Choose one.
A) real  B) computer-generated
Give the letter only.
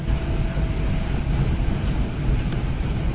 A